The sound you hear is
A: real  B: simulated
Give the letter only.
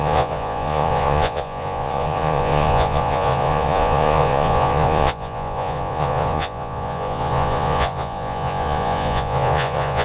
B